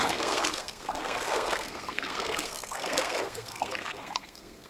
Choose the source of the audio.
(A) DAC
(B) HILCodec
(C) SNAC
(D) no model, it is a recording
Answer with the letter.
C